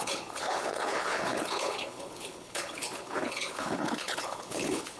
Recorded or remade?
remade